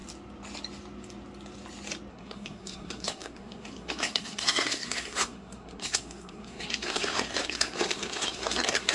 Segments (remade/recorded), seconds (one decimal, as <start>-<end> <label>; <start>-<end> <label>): 0.0-2.1 recorded; 2.1-8.9 remade